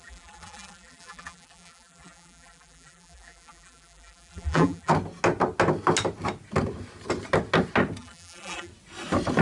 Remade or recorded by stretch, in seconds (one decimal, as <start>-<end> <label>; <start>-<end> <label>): 0.0-4.9 remade; 4.9-8.0 recorded; 8.0-8.7 remade; 8.7-9.4 recorded